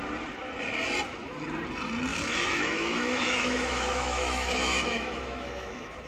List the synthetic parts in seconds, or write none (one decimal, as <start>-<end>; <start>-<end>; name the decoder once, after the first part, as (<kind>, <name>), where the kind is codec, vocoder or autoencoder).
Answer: 2.1-6.1 (autoencoder, DAC-VAE)